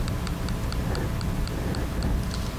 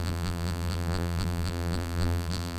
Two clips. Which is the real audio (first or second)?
first